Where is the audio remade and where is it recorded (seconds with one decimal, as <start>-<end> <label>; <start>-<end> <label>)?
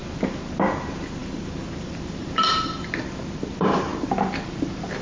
0.0-1.2 recorded; 1.2-2.9 remade; 2.9-3.9 recorded; 3.9-5.0 remade